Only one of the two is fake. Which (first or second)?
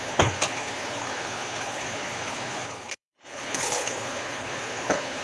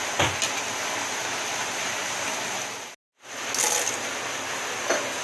first